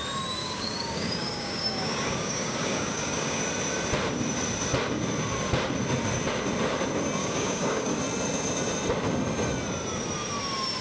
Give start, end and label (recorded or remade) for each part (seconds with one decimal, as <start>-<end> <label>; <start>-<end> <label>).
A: 0.0-0.4 recorded; 0.4-3.4 remade; 3.4-7.2 recorded; 7.2-8.0 remade; 8.0-10.8 recorded